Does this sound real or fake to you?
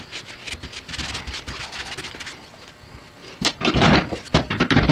real